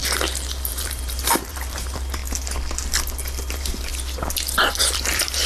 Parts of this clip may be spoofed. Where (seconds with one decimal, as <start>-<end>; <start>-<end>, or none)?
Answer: 0.7-2.2; 3.5-3.9; 4.8-5.5